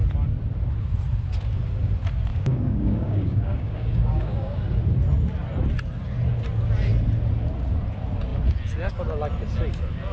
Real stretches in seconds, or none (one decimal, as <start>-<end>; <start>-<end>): 0.0-2.3; 4.6-10.1